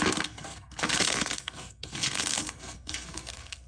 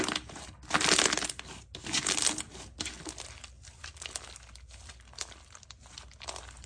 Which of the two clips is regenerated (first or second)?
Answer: first